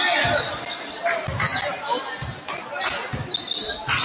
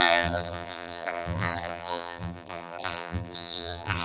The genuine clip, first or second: first